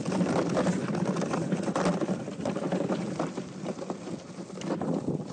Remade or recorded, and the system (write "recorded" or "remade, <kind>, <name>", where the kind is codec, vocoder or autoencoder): recorded